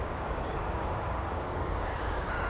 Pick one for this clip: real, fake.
fake